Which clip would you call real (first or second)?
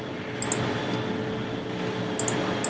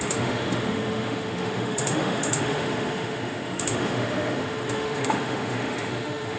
first